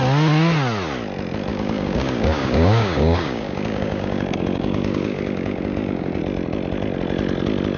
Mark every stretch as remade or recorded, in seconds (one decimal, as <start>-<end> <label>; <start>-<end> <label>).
0.0-1.5 recorded; 1.5-6.2 remade; 6.2-7.8 recorded